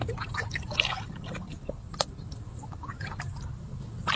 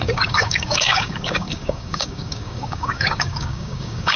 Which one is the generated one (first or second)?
second